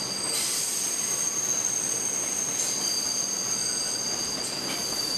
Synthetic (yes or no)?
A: no